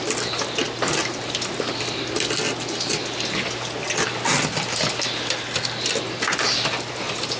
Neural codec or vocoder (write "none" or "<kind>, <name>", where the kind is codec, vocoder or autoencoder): none